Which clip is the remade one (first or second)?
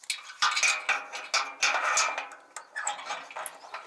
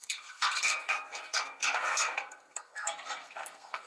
second